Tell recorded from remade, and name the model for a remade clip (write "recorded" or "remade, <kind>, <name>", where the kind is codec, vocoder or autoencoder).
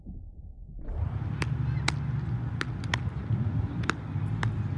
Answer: recorded